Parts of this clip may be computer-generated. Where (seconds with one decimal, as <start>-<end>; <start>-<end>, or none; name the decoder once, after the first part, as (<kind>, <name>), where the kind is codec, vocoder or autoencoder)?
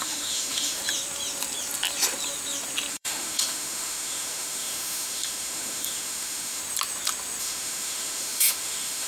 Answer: 0.0-0.8 (autoencoder, DAC-VAE); 2.9-6.6; 7.4-9.1